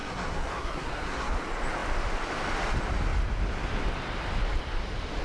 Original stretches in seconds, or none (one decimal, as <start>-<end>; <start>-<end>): 1.3-5.2